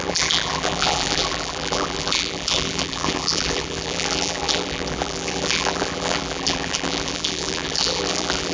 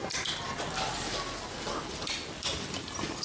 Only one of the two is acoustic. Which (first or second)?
second